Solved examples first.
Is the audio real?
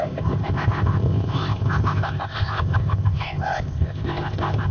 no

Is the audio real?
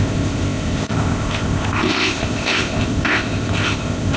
no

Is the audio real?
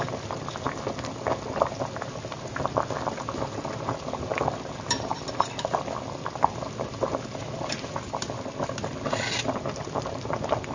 yes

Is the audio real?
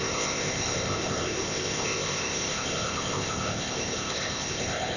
no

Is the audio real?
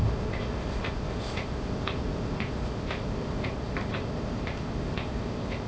no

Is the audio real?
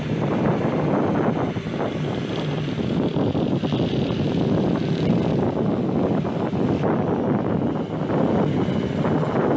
yes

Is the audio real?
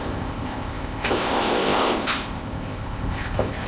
no